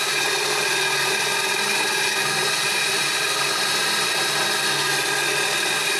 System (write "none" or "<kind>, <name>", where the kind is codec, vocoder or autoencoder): none